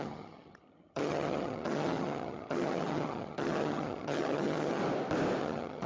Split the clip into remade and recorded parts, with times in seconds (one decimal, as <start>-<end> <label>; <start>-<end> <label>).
0.0-4.8 remade; 4.8-5.4 recorded; 5.4-5.9 remade